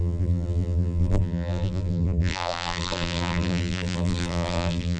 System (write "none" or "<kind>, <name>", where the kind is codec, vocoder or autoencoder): vocoder, BigVGAN v2